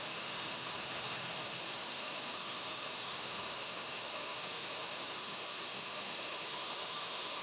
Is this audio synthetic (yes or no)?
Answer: yes